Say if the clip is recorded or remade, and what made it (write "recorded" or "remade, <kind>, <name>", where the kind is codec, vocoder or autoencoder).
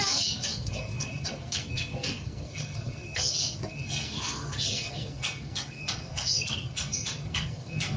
remade, codec, SNAC